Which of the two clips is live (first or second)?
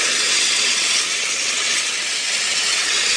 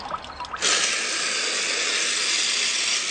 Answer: second